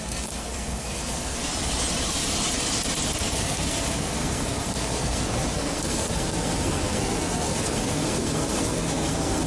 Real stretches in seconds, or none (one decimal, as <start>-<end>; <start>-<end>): 1.5-3.2